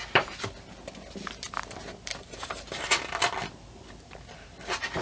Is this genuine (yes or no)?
yes